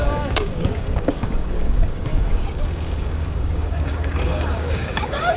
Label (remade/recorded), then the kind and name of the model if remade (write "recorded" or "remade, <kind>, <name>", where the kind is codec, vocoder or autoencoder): remade, codec, DAC